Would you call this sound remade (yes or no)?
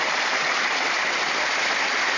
no